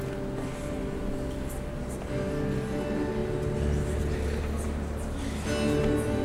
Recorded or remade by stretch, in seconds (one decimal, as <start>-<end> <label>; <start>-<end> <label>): 0.0-6.2 recorded